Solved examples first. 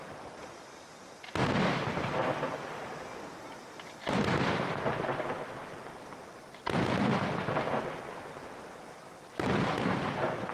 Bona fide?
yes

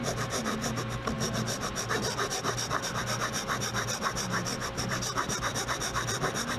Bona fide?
no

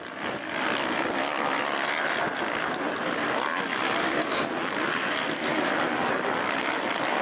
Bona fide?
no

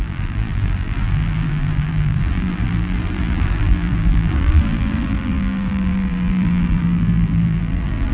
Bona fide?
no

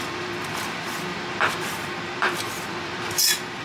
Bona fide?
no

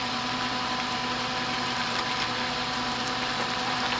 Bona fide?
no